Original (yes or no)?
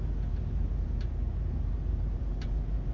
yes